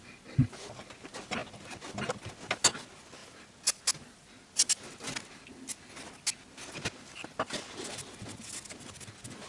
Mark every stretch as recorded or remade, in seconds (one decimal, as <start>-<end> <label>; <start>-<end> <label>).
0.0-9.5 recorded

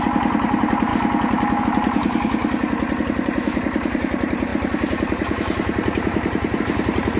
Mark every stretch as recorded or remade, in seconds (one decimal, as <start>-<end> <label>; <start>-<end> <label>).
0.0-0.9 remade; 0.9-1.6 recorded; 1.6-2.4 remade; 2.4-3.0 recorded; 3.0-7.2 remade

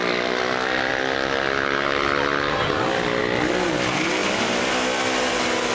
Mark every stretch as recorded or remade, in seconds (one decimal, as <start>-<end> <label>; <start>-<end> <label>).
0.0-4.2 recorded; 4.2-4.7 remade; 4.7-5.7 recorded